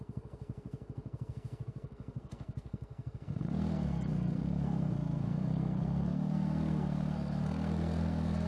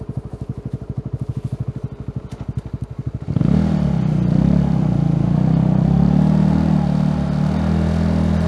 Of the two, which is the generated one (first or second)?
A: first